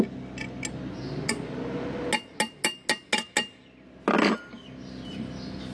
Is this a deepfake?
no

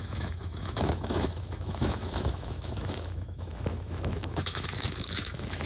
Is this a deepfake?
yes